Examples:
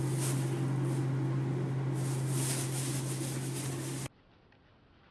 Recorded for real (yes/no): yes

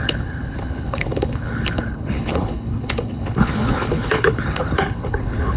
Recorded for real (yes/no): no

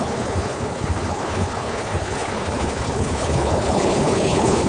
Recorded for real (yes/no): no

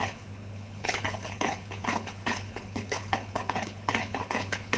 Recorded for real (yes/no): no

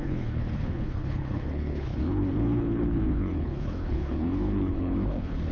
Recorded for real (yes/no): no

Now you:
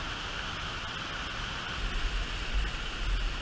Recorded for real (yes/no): yes